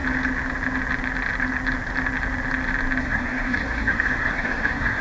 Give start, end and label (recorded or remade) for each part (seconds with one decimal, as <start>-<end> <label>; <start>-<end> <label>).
0.0-3.0 recorded; 3.0-5.0 remade